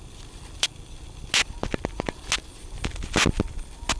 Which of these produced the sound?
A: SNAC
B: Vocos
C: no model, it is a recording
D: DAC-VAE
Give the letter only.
C